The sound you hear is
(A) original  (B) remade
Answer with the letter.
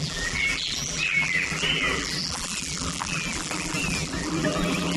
B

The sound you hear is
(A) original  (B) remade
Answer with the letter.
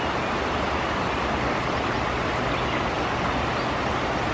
A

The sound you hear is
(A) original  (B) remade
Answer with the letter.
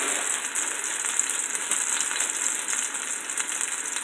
A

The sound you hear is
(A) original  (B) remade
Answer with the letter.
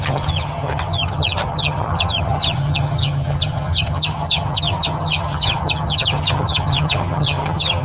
B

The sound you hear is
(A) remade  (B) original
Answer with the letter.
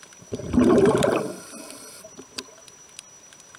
A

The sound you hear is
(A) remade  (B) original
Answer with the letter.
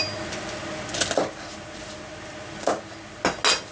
B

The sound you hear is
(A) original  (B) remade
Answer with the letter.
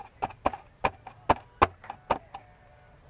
A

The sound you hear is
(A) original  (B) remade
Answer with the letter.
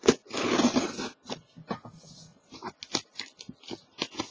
A